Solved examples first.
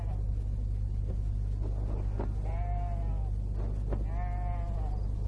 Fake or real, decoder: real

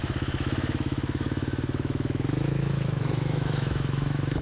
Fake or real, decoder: fake, autoencoder, DAC-VAE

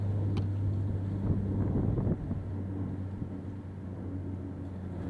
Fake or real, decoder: real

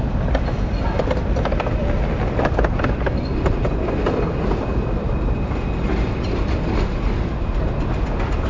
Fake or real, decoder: real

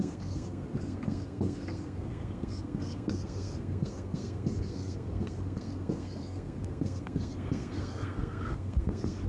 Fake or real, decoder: fake, codec, SNAC